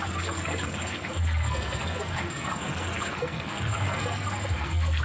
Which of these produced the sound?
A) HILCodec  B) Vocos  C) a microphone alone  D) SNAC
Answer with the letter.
D